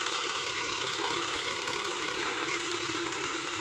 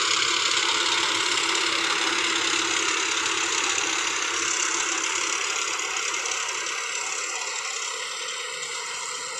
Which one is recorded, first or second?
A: second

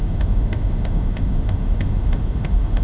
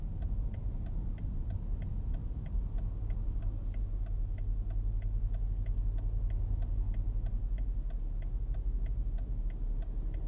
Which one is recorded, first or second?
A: second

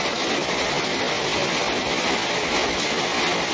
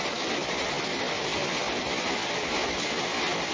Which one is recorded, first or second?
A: first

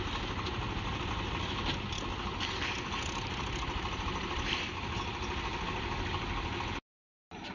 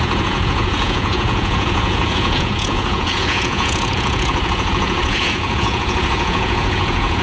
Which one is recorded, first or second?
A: first